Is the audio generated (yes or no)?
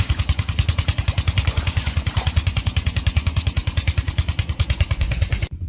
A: yes